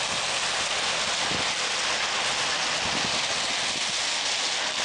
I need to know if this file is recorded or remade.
recorded